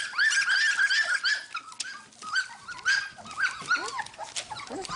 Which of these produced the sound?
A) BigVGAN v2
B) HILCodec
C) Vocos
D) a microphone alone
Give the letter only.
D